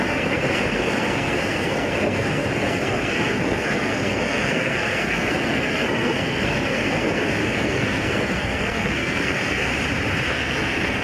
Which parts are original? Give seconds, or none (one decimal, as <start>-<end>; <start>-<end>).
9.7-10.3